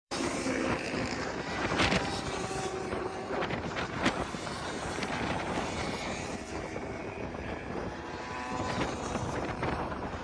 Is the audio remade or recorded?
remade